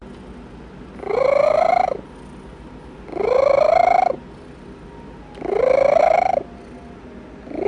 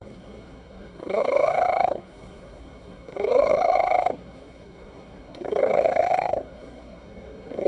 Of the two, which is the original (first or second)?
first